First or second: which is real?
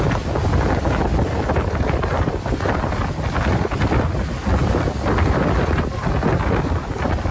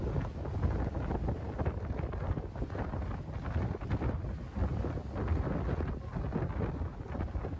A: second